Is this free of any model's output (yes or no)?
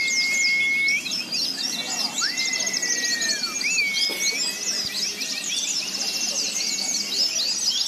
yes